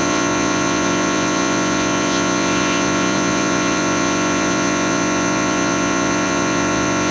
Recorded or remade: remade